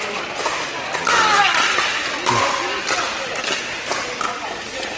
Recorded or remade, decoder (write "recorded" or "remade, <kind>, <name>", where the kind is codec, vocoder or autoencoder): recorded